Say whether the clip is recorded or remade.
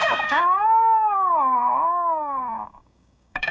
remade